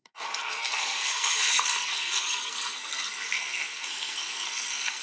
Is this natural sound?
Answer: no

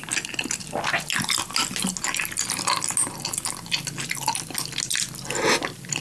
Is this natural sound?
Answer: yes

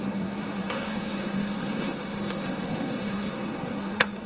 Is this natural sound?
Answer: no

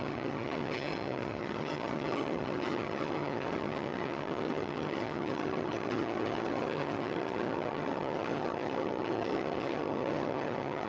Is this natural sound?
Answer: no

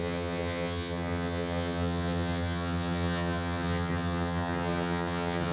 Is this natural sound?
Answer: no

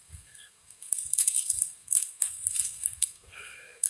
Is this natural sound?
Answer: no